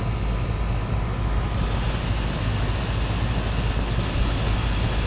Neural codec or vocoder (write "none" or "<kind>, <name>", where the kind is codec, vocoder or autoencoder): none